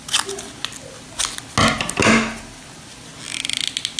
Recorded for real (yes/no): yes